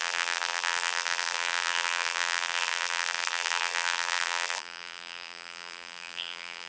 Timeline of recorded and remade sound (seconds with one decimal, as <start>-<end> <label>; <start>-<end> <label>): 0.0-6.7 remade